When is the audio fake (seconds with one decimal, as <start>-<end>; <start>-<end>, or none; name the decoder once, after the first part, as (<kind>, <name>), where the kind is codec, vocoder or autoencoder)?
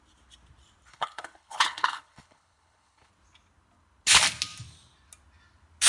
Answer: 0.9-3.1 (codec, HILCodec)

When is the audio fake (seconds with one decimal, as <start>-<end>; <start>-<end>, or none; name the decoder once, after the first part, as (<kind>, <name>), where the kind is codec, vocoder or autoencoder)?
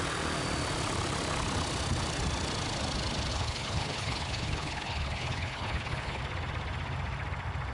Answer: 3.3-6.2 (codec, HILCodec)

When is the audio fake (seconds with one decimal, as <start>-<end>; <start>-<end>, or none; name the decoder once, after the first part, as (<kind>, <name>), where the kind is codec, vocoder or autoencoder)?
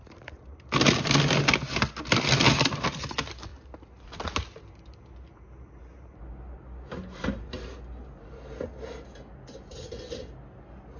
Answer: none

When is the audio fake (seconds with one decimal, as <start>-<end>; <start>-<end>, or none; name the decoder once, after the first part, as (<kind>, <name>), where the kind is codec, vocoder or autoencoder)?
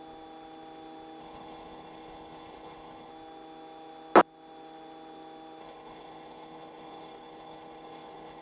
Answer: 1.2-3.1 (codec, HILCodec); 5.6-8.4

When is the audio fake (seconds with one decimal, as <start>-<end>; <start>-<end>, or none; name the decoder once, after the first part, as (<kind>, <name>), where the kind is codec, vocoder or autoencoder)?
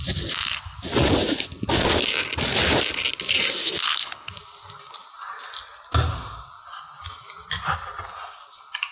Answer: 3.6-4.3 (codec, HILCodec)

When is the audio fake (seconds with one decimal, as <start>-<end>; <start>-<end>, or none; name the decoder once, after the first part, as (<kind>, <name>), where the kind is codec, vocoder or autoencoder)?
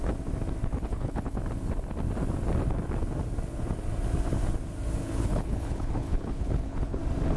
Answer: 0.7-1.4 (codec, HILCodec); 5.0-7.0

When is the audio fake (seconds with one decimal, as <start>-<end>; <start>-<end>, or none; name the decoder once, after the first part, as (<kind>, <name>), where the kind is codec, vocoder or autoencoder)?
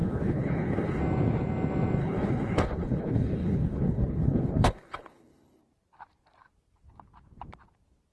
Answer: 0.0-1.0 (codec, HILCodec); 2.0-5.6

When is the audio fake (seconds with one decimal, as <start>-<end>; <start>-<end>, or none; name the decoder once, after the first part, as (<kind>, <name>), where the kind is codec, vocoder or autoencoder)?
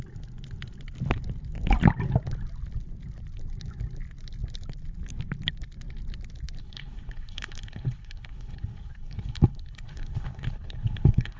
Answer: 6.6-11.4 (codec, HILCodec)